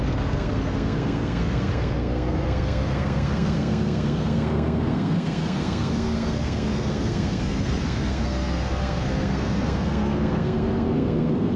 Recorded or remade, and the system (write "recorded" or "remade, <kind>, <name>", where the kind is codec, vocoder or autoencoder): remade, codec, SNAC